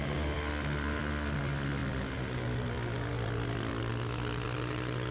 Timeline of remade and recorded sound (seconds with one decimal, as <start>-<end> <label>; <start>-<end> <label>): 0.0-5.1 recorded